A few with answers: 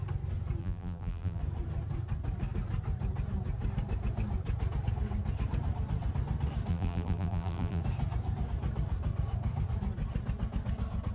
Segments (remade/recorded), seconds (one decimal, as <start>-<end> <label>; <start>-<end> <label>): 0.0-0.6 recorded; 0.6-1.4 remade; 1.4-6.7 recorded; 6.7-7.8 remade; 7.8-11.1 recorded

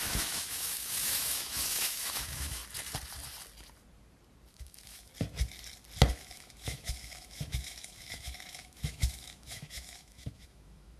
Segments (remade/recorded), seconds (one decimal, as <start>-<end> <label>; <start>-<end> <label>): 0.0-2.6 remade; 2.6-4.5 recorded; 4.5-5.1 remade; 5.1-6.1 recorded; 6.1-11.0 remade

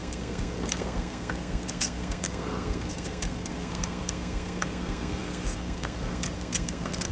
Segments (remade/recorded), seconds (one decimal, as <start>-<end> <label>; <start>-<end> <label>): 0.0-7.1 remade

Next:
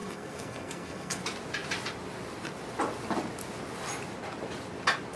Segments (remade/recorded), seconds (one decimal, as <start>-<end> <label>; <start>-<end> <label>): 0.0-1.2 remade; 1.2-5.2 recorded